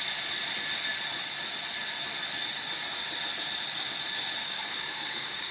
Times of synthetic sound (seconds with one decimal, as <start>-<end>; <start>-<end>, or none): 4.4-5.5